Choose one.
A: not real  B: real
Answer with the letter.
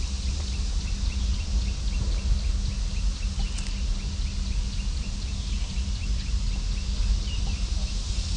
B